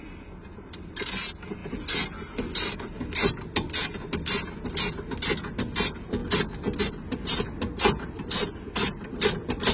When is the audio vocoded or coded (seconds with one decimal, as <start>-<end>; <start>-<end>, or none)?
none